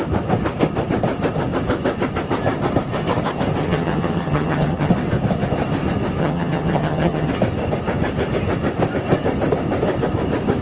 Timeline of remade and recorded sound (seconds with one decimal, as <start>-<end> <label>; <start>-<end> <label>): 0.0-3.6 recorded; 3.6-4.9 remade; 4.9-6.2 recorded; 6.2-7.3 remade; 7.3-10.6 recorded